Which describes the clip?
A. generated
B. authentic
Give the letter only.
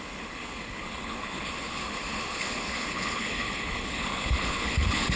A